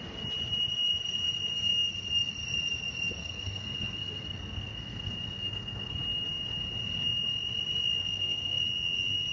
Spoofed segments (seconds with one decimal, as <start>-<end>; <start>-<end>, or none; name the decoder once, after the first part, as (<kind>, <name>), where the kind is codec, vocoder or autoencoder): 3.2-5.9 (codec, SNAC); 8.0-8.6